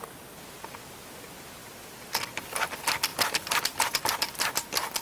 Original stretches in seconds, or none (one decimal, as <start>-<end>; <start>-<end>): 0.0-1.6; 2.3-3.1; 4.0-5.0